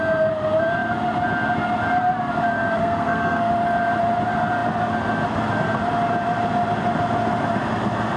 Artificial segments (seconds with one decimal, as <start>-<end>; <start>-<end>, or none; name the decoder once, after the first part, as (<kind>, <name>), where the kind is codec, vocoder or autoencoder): 2.8-3.5 (codec, SNAC)